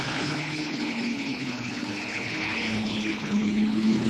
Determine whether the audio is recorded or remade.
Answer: remade